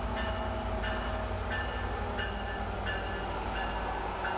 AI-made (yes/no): no